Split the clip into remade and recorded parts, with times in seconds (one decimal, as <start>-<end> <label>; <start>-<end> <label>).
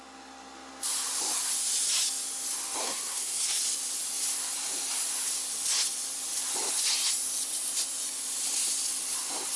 0.0-2.8 recorded; 2.8-3.6 remade; 3.6-9.6 recorded